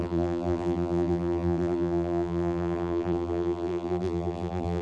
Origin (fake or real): fake